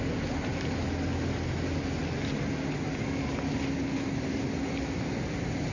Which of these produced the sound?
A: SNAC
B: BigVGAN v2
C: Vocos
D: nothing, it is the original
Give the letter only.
D